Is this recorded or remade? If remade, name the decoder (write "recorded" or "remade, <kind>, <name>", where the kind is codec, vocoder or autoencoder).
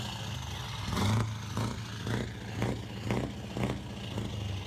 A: recorded